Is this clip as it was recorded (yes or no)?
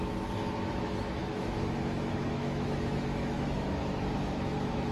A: no